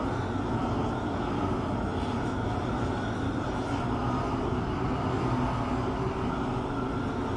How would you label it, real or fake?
real